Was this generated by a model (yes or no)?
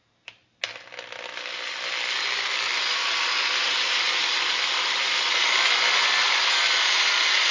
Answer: no